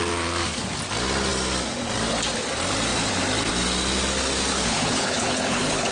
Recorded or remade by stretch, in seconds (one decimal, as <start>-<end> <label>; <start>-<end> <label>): 0.0-4.5 recorded; 4.5-5.9 remade